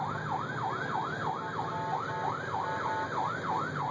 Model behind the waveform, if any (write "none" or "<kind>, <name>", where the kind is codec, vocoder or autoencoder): none